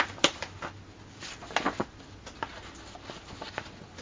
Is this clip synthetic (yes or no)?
no